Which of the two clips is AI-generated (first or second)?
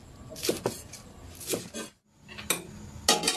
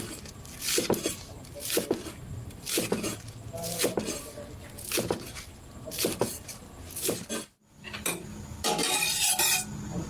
second